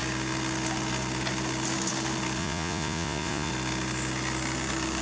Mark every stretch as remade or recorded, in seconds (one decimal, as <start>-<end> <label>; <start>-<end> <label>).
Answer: 0.0-2.4 recorded; 2.4-3.5 remade; 3.5-5.0 recorded